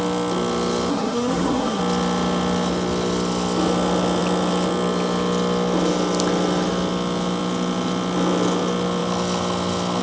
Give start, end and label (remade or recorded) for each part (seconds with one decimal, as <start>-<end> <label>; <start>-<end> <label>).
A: 0.0-0.9 recorded; 0.9-1.8 remade; 1.8-10.0 recorded